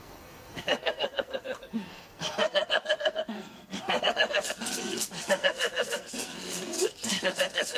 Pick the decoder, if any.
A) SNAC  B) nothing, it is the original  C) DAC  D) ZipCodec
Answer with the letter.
A